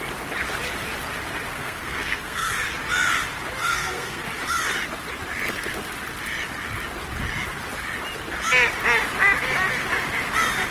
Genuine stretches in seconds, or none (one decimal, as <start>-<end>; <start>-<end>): 0.0-1.5; 2.5-3.6; 4.2-10.7